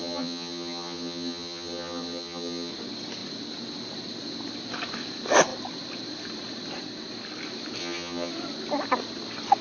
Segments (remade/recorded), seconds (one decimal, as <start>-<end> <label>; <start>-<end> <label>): 0.0-2.7 remade; 2.7-7.8 recorded; 7.8-8.3 remade; 8.3-9.6 recorded

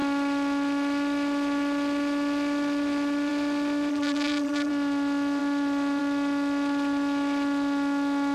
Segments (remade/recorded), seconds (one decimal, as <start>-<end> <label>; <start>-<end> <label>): 0.0-3.9 recorded; 3.9-4.7 remade; 4.7-8.3 recorded

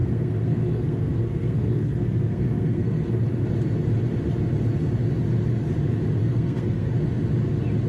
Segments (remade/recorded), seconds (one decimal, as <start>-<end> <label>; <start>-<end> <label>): 0.0-3.2 remade; 3.2-6.2 recorded; 6.2-6.9 remade; 6.9-7.9 recorded

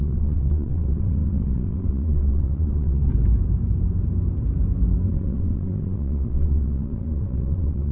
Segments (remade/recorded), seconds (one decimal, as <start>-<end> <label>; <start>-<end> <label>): 0.0-3.1 remade; 3.1-5.1 recorded; 5.1-7.9 remade

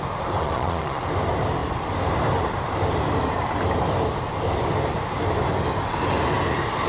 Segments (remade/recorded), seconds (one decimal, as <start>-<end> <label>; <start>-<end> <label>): 0.0-0.4 recorded; 0.4-1.0 remade; 1.0-6.9 recorded

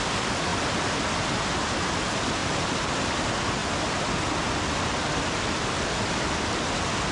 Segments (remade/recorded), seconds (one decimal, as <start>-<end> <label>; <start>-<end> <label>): 0.0-7.1 recorded

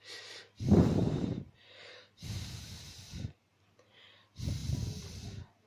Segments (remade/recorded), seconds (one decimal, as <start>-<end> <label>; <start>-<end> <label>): 0.0-1.0 recorded; 1.0-4.0 remade; 4.0-5.7 recorded